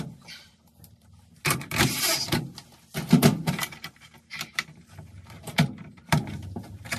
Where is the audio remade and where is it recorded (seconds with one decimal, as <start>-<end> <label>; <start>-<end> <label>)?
0.0-2.7 remade; 2.7-3.5 recorded; 3.5-7.0 remade